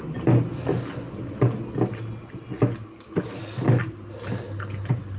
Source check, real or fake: real